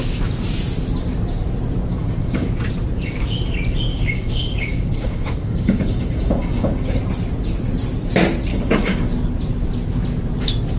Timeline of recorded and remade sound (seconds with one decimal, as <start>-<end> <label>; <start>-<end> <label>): 0.0-1.9 recorded; 1.9-2.5 remade; 2.5-3.9 recorded; 3.9-7.0 remade; 7.0-8.5 recorded; 8.5-9.1 remade; 9.1-10.8 recorded

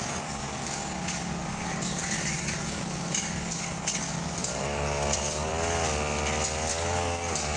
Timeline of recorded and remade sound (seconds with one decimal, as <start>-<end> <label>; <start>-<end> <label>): 0.0-5.5 remade; 5.5-6.7 recorded; 6.7-7.6 remade

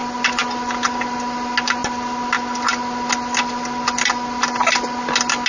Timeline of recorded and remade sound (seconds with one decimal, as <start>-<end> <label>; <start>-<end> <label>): 0.0-5.5 recorded

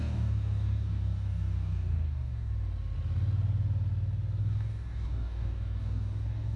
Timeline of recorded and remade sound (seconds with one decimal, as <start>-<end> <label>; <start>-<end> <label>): 0.0-2.5 remade; 2.5-4.4 recorded; 4.4-6.6 remade

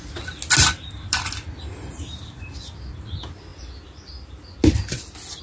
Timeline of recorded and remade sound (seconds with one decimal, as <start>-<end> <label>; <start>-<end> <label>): 0.0-5.4 recorded

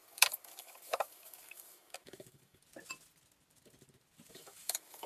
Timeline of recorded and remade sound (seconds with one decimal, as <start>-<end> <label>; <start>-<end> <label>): 0.0-2.6 remade; 2.6-4.3 recorded; 4.3-5.1 remade

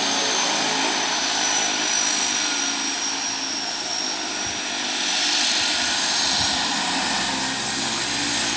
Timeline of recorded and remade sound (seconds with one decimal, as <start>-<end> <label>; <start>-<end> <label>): 0.0-8.6 recorded

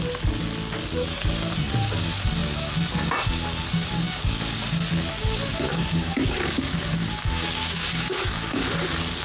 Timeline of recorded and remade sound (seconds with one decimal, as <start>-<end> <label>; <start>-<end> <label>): 0.0-5.5 recorded; 5.5-8.7 remade; 8.7-9.2 recorded